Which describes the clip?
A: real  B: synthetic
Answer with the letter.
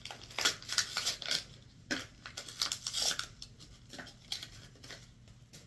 A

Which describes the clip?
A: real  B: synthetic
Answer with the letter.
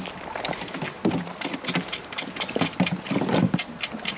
A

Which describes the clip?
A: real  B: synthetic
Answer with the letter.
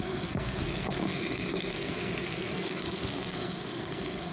B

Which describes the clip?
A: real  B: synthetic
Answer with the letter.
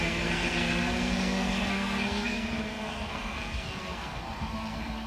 B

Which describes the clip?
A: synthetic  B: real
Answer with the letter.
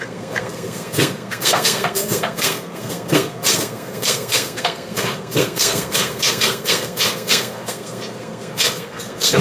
A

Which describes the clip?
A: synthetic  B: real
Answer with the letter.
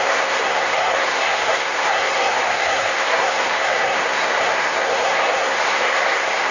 A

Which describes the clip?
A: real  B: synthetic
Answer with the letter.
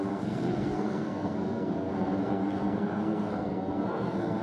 B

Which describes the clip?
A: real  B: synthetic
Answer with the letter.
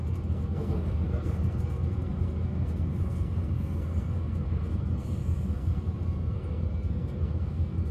B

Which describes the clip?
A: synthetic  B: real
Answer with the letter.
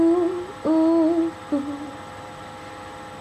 B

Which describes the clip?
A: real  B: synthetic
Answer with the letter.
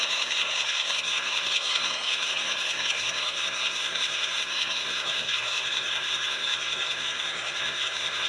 B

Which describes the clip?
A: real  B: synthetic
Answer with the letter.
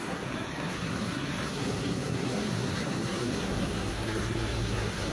B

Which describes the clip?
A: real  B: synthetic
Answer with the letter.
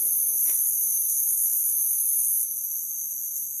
B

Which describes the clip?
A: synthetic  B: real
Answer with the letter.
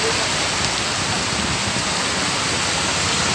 B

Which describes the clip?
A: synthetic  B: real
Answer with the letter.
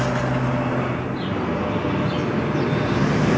B